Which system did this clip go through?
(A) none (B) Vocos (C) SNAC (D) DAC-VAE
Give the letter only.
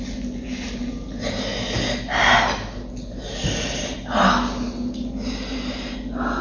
A